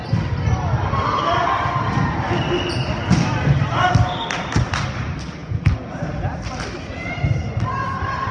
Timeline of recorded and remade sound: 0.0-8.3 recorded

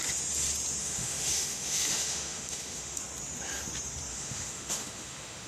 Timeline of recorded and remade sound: 0.0-0.8 recorded; 0.8-3.0 remade; 3.0-4.1 recorded; 4.1-5.5 remade

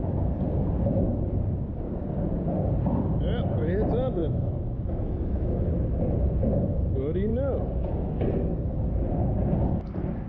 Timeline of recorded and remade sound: 0.0-4.2 recorded; 4.2-5.7 remade; 5.7-10.3 recorded

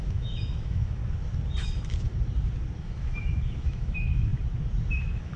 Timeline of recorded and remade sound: 0.0-1.0 remade; 1.0-1.6 recorded; 1.6-2.1 remade; 2.1-2.8 recorded; 2.8-4.3 remade; 4.3-5.0 recorded; 5.0-5.4 remade

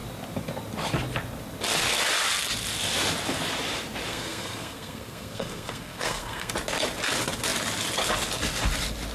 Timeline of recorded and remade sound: 0.0-4.1 recorded; 4.1-6.5 remade; 6.5-9.1 recorded